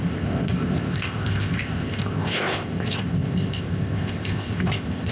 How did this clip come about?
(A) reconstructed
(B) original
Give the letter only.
A